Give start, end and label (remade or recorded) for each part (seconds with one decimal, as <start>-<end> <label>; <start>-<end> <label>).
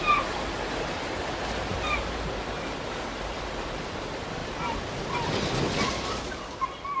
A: 0.0-7.0 recorded